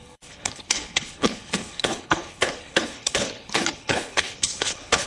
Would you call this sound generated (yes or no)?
yes